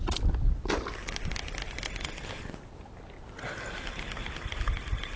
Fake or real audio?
real